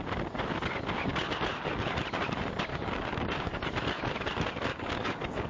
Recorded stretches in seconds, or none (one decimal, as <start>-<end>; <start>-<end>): 0.0-2.7; 3.7-4.7